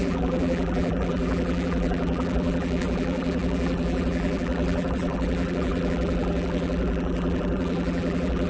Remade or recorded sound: remade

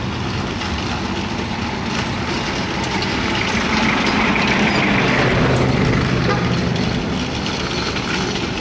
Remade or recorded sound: recorded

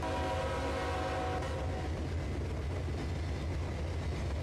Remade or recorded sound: recorded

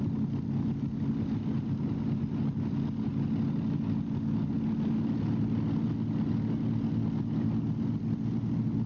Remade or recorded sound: recorded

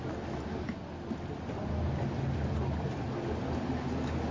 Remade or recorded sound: recorded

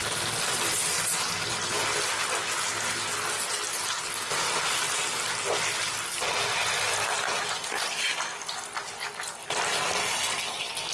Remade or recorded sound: recorded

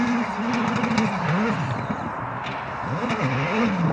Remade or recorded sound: recorded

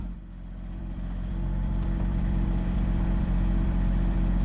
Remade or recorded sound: remade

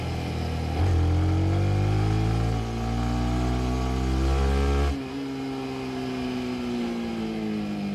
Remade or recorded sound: recorded